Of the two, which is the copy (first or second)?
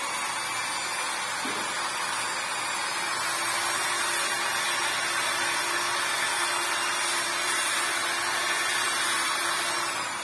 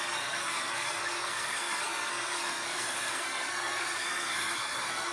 second